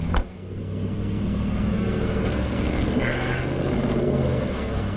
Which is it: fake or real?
fake